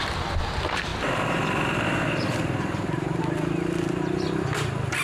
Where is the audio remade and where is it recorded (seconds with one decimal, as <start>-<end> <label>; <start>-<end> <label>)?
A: 0.0-0.9 recorded; 0.9-3.2 remade; 3.2-5.0 recorded

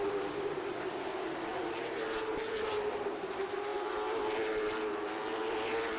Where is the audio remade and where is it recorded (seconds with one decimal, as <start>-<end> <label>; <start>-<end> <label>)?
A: 0.0-1.6 recorded; 1.6-3.2 remade; 3.2-6.0 recorded

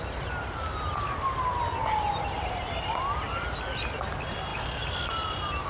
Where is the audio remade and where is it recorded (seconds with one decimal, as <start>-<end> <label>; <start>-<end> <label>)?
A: 0.0-5.7 recorded

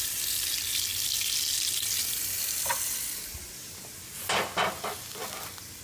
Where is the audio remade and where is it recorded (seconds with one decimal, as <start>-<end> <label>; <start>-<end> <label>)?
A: 0.0-5.8 recorded

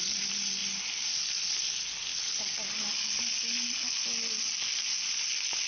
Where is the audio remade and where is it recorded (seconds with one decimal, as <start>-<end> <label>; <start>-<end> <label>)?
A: 0.0-0.6 recorded; 0.6-1.6 remade; 1.6-5.7 recorded

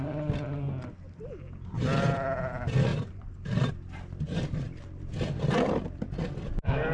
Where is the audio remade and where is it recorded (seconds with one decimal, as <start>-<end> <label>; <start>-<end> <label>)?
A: 0.0-2.9 recorded; 2.9-3.7 remade; 3.7-6.9 recorded

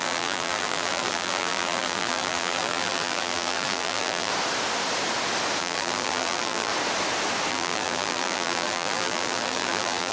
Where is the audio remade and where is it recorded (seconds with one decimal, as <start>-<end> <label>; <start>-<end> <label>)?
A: 0.0-4.3 remade; 4.3-5.6 recorded; 5.6-6.7 remade; 6.7-7.5 recorded; 7.5-10.1 remade

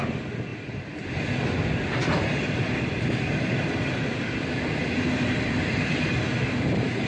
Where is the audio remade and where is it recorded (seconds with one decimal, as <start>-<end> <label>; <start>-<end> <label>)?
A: 0.0-0.5 recorded; 0.5-4.8 remade; 4.8-7.1 recorded